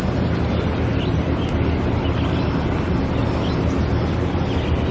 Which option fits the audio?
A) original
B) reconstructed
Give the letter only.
A